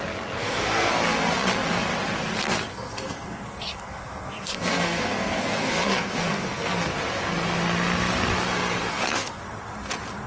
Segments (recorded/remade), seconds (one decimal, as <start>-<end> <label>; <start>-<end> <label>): 0.0-0.4 recorded; 0.4-0.9 remade; 0.9-2.7 recorded; 2.7-6.9 remade; 6.9-8.9 recorded; 8.9-9.4 remade; 9.4-10.3 recorded